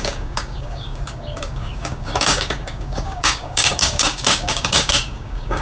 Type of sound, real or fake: fake